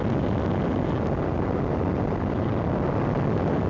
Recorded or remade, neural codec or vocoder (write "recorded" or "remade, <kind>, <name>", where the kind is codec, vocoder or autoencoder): recorded